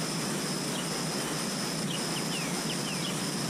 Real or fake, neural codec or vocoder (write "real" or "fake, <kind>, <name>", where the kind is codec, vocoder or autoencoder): real